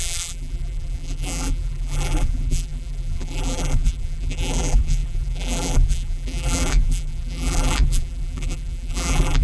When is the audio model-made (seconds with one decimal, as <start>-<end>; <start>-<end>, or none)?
0.0-9.4